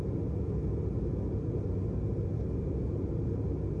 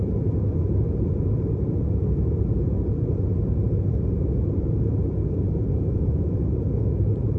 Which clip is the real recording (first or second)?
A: first